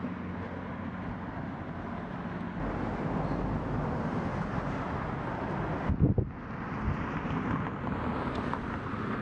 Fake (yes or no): no